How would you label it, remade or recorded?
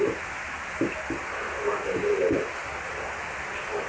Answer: recorded